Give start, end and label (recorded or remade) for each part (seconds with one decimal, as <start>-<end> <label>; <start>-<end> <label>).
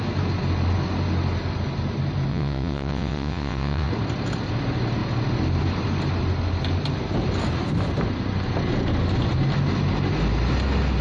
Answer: 0.0-2.3 recorded; 2.3-3.9 remade; 3.9-11.0 recorded